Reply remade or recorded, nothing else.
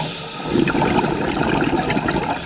recorded